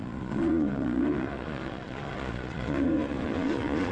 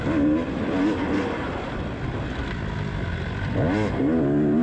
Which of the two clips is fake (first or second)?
first